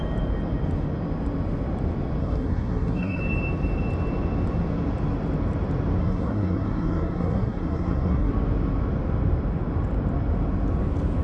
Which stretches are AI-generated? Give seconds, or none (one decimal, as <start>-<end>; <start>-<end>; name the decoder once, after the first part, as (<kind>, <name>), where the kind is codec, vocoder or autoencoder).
2.2-3.2 (codec, SNAC); 6.0-8.3